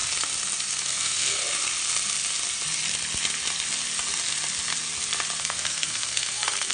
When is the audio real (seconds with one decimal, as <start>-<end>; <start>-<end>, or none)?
0.0-0.8; 1.4-5.4